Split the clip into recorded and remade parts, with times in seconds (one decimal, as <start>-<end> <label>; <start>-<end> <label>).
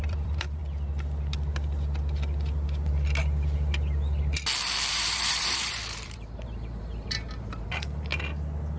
0.0-0.6 remade; 0.6-4.9 recorded; 4.9-8.1 remade; 8.1-8.8 recorded